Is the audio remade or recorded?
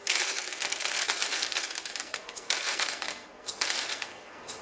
remade